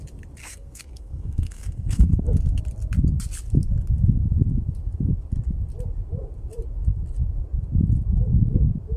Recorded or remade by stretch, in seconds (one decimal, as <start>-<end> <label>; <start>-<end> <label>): 0.0-0.4 recorded; 0.4-2.6 remade; 2.6-9.0 recorded